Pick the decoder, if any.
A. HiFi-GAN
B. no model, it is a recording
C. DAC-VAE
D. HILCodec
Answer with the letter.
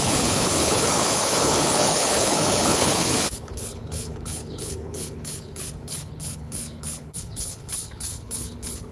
D